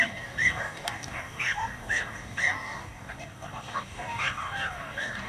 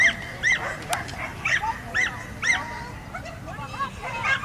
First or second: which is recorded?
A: second